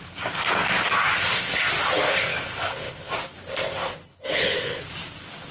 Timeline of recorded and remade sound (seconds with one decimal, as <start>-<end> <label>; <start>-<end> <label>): 0.0-2.3 recorded; 2.3-3.1 remade; 3.1-4.1 recorded; 4.1-4.8 remade; 4.8-5.5 recorded